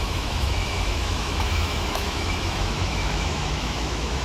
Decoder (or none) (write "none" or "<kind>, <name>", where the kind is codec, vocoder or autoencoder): autoencoder, DAC-VAE